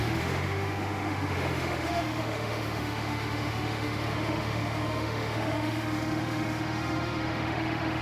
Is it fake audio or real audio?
fake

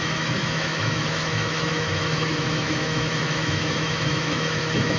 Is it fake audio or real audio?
fake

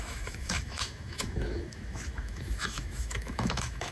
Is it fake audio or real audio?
fake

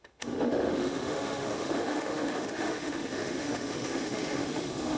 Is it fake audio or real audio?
fake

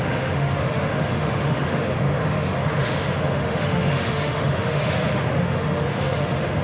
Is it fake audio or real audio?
fake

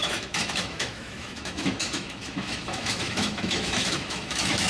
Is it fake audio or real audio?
fake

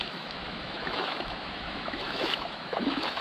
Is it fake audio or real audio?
fake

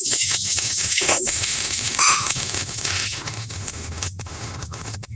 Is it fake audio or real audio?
fake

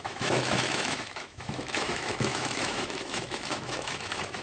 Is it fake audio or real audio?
fake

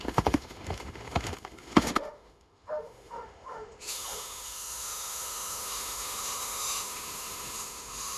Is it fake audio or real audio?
fake